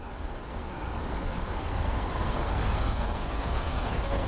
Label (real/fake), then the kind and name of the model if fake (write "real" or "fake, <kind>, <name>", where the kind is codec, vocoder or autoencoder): fake, codec, SNAC